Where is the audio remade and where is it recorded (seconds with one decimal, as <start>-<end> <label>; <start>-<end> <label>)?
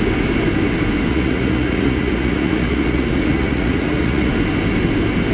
0.0-1.1 recorded; 1.1-4.3 remade; 4.3-5.3 recorded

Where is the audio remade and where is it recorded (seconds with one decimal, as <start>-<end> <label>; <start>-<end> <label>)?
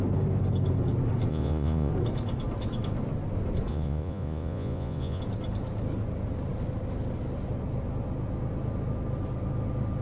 0.0-1.3 recorded; 1.3-1.9 remade; 1.9-3.7 recorded; 3.7-5.2 remade; 5.2-10.0 recorded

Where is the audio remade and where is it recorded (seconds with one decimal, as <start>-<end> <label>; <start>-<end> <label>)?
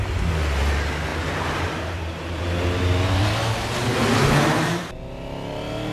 0.0-1.1 recorded; 1.1-2.4 remade; 2.4-5.9 recorded